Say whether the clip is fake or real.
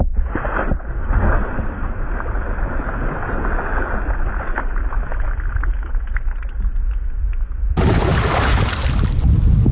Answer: real